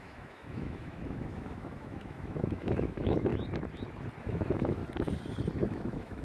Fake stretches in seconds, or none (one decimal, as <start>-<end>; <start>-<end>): 0.0-3.3; 4.2-4.8; 5.6-6.2